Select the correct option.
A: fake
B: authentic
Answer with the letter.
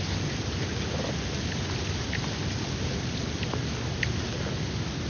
B